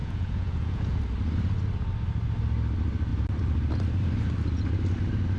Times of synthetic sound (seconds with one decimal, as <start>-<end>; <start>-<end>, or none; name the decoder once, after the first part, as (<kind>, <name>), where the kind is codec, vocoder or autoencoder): 0.0-1.0 (vocoder, Vocos)